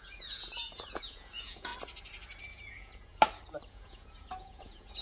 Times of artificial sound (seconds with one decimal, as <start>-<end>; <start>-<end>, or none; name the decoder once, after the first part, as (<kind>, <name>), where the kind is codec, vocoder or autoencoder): 0.0-1.7 (vocoder, Vocos); 2.4-3.1; 3.7-5.0

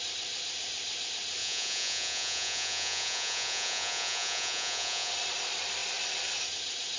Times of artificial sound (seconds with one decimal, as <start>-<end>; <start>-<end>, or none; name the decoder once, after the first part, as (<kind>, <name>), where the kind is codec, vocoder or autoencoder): 1.4-5.1 (vocoder, Vocos)

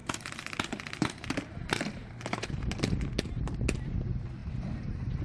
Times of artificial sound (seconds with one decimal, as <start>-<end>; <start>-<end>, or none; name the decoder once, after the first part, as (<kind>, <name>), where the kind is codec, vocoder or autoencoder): 0.0-3.1 (vocoder, BigVGAN v2)

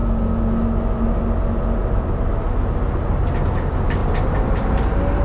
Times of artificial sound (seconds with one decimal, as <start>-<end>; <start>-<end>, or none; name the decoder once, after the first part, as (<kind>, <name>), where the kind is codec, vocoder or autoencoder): none

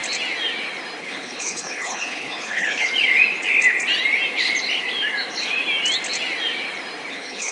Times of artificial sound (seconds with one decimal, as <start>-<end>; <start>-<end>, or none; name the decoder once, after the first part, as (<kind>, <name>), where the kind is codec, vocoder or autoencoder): 1.0-2.9 (codec, HILCodec); 7.1-7.5

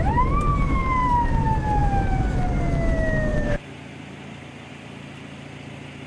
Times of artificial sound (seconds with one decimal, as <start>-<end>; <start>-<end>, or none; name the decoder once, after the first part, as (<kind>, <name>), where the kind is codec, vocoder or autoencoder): 0.8-1.3 (vocoder, BigVGAN v2); 1.8-2.6; 3.3-4.7

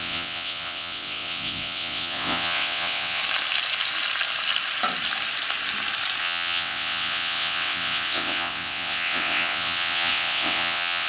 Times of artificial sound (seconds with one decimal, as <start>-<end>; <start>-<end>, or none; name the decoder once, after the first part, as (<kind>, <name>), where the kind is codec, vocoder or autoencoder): 0.0-3.2 (vocoder, WaveNeXt); 6.2-11.1

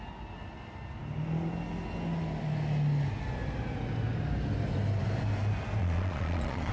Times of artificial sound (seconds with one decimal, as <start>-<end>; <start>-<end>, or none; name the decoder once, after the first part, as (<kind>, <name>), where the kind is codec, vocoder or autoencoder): 5.8-6.7 (vocoder, Vocos)